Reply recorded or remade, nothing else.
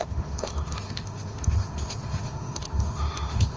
remade